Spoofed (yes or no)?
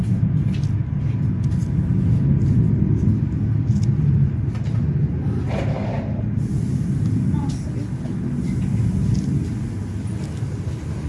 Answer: no